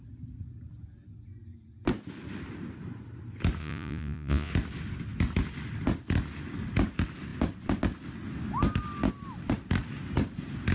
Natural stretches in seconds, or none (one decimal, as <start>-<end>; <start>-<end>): 0.0-3.6; 4.5-10.7